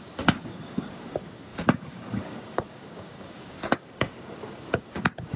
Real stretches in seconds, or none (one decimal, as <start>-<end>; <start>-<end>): none